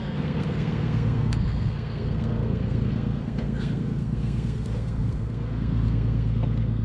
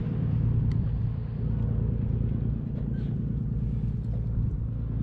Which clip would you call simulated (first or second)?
first